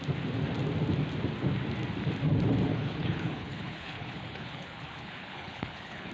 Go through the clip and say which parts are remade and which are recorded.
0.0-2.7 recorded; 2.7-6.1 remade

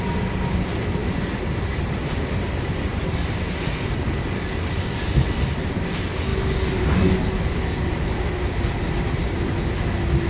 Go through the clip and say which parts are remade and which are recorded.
0.0-10.3 recorded